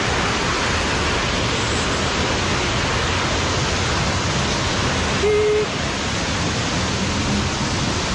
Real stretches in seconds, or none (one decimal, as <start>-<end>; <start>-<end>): 0.0-8.1